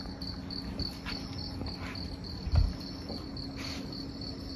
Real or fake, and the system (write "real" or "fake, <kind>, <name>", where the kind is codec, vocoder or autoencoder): real